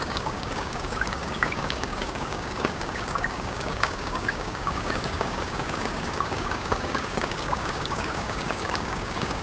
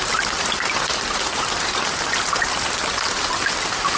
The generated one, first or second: first